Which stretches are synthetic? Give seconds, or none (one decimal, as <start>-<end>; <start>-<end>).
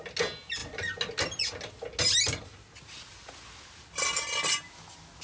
none